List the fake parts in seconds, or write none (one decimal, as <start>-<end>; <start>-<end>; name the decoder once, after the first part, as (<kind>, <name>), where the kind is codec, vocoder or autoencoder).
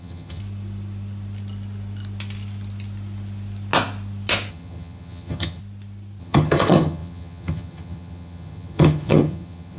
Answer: 0.0-0.4 (vocoder, HiFi-GAN); 4.5-5.6; 6.2-9.8